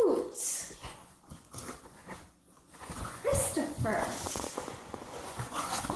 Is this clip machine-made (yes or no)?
yes